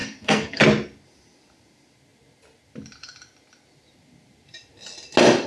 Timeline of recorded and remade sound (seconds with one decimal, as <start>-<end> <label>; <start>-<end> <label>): 0.0-0.6 remade; 0.6-5.5 recorded